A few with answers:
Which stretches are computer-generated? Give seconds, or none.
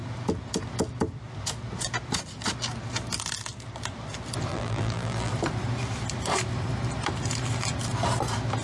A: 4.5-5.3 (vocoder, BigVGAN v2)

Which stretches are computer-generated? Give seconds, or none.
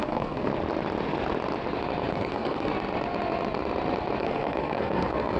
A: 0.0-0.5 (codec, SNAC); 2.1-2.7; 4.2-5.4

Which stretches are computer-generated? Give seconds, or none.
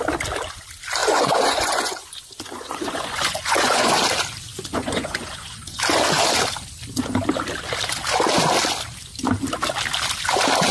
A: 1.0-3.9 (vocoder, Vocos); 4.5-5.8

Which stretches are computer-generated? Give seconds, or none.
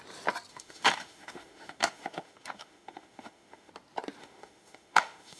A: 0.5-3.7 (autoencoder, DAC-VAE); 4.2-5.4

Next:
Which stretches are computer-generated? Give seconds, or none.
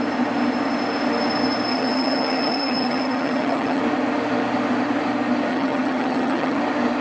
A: 1.7-3.8 (vocoder, HiFi-GAN); 5.5-6.6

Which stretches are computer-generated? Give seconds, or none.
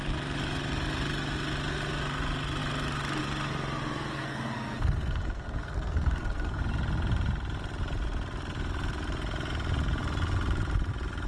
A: 4.1-6.6 (codec, SNAC)